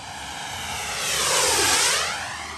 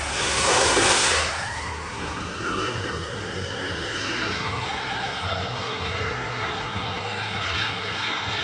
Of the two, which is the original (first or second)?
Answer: first